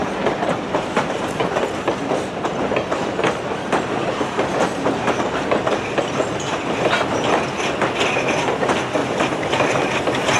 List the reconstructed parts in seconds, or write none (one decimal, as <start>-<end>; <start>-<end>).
0.0-1.4; 4.0-5.7; 9.0-9.5